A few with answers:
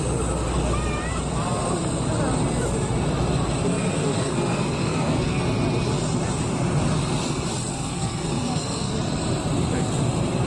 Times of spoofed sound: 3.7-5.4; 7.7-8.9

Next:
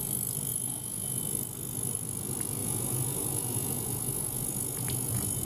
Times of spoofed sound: 0.5-1.2; 2.6-5.4